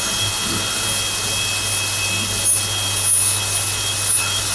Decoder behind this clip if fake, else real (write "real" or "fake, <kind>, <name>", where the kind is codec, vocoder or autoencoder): real